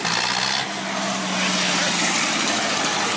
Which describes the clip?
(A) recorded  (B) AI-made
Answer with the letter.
A